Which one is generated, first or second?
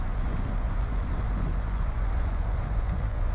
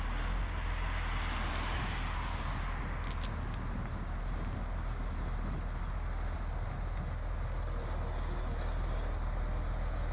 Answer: first